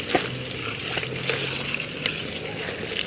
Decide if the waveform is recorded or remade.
recorded